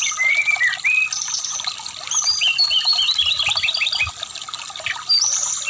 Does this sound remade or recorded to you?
recorded